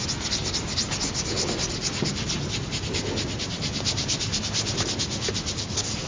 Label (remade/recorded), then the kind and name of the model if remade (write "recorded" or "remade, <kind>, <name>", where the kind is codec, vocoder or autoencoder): recorded